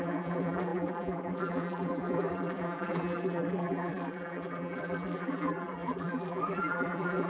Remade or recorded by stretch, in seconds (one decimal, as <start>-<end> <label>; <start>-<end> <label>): 0.0-7.3 remade